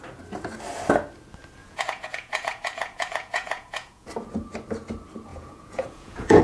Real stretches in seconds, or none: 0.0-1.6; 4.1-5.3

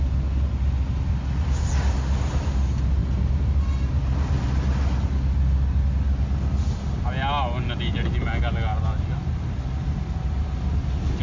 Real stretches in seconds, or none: 0.0-11.2

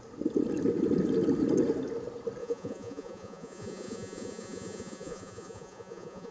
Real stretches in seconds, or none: 0.0-2.4

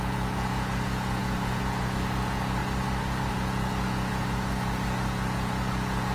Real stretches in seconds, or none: 2.6-3.3